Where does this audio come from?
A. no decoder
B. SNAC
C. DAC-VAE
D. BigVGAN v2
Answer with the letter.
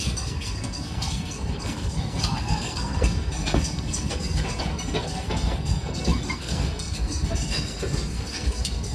B